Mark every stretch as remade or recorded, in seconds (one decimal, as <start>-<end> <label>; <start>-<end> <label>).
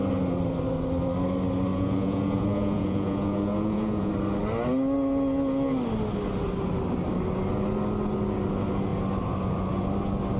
0.0-1.7 recorded; 1.7-4.1 remade; 4.1-10.4 recorded